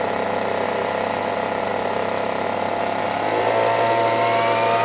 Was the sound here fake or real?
real